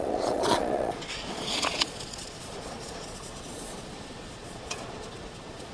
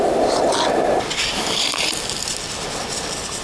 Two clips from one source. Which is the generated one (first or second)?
first